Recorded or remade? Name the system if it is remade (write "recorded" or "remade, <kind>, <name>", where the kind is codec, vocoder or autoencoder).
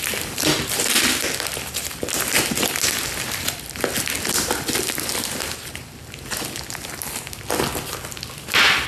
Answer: recorded